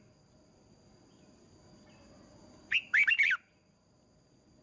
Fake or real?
real